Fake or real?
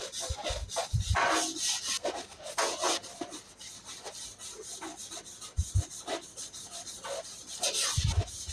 real